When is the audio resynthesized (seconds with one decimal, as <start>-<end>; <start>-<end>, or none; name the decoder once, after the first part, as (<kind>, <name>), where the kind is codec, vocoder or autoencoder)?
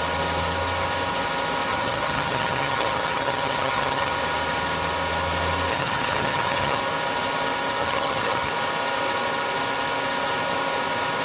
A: 1.7-4.1 (vocoder, HiFi-GAN); 5.7-6.8; 7.8-8.5